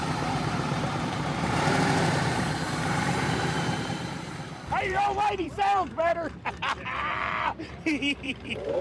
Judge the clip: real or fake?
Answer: fake